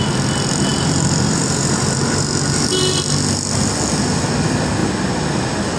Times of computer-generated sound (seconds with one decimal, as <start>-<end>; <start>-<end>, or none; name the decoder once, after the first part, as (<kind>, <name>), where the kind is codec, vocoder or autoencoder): none